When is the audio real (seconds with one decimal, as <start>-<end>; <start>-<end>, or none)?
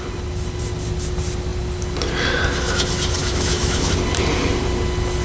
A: 0.0-3.2; 3.9-5.2